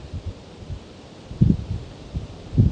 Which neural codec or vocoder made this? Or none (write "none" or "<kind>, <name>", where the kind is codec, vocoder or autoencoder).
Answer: vocoder, BigVGAN v2